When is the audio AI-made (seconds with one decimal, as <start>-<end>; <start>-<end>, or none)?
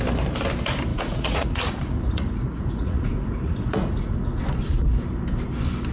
0.9-4.4